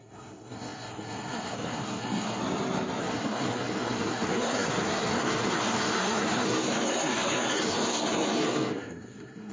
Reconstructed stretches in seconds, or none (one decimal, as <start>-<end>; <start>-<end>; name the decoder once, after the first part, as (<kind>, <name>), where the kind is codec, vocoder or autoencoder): 0.0-2.4 (codec, SNAC); 3.0-9.5